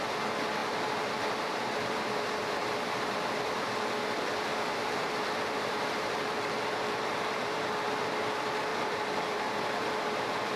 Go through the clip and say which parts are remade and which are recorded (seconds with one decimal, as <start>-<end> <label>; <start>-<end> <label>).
0.0-0.6 recorded; 0.6-3.9 remade; 3.9-4.5 recorded; 4.5-8.2 remade; 8.2-8.7 recorded; 8.7-10.6 remade